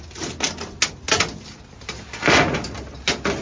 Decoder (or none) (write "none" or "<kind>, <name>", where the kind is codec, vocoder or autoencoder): none